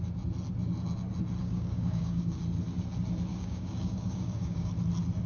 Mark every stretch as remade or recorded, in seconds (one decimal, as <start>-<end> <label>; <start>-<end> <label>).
0.0-1.4 recorded; 1.4-2.4 remade; 2.4-3.3 recorded; 3.3-4.7 remade; 4.7-5.3 recorded